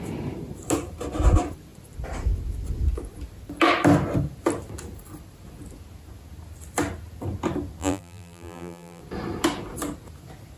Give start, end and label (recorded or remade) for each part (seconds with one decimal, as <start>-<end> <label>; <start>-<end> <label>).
0.0-7.8 recorded; 7.8-9.0 remade; 9.0-10.6 recorded